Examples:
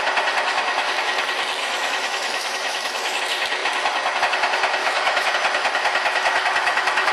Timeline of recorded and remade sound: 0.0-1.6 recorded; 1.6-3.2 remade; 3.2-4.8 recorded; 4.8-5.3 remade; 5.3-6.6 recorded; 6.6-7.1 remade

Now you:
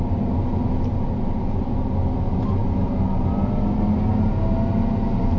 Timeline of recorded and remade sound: 0.0-5.4 recorded

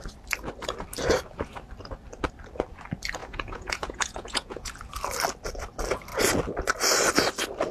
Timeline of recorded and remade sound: 0.0-3.2 recorded; 3.2-4.7 remade; 4.7-7.7 recorded

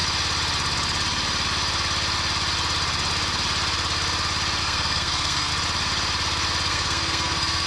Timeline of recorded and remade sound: 0.0-4.6 recorded; 4.6-5.5 remade; 5.5-6.7 recorded; 6.7-7.7 remade

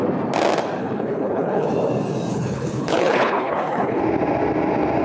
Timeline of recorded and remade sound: 0.0-0.8 recorded; 0.8-1.7 remade; 1.7-2.3 recorded; 2.3-4.0 remade; 4.0-5.0 recorded

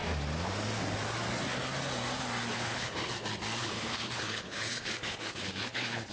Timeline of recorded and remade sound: 0.0-2.5 recorded; 2.5-3.1 remade; 3.1-3.6 recorded; 3.6-6.1 remade

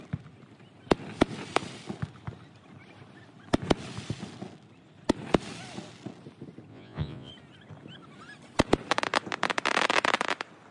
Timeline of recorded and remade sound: 0.0-6.7 recorded; 6.7-7.3 remade; 7.3-10.7 recorded